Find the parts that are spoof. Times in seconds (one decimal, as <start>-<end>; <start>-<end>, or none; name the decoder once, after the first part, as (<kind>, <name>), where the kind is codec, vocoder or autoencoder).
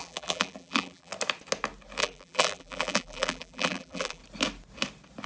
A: 0.0-1.1 (vocoder, BigVGAN v2); 2.0-4.2